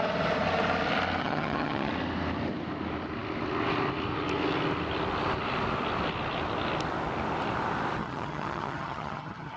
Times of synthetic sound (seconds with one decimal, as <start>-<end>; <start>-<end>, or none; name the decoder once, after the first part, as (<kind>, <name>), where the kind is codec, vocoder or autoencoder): 1.2-1.9 (vocoder, HiFi-GAN); 8.0-9.6